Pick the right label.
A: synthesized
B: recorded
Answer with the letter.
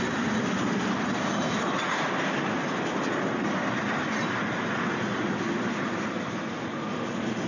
B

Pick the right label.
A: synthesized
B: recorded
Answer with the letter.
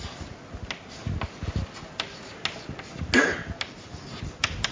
B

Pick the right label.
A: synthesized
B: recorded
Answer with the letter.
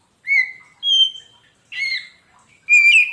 B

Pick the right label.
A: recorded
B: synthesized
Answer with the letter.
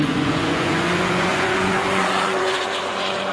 B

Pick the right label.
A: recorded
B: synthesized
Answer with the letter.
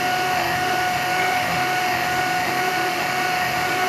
B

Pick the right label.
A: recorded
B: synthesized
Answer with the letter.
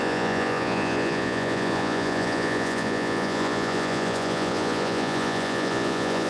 B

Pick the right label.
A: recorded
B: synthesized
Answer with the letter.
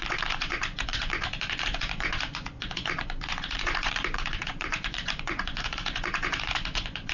B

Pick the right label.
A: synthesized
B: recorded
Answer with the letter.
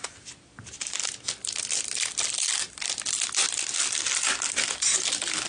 B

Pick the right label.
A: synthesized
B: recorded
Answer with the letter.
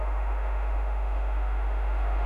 A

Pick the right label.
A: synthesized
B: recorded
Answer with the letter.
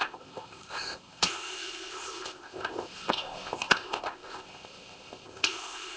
A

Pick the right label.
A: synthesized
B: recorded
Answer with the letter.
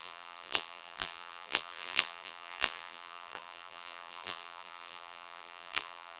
A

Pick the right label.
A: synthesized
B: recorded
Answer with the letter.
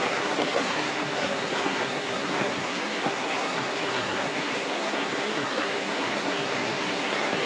A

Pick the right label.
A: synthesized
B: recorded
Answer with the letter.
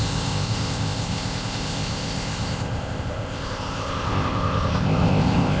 A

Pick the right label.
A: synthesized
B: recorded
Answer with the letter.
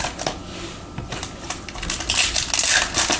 B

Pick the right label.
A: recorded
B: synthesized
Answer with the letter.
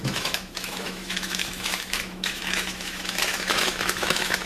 B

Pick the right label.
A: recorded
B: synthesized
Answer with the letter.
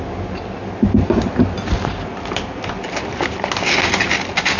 A